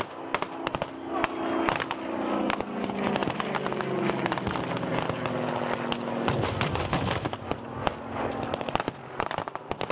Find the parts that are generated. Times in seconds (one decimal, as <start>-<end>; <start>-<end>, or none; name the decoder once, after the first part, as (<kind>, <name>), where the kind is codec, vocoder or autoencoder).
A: none